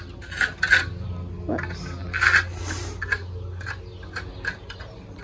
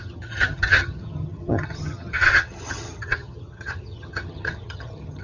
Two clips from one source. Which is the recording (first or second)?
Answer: first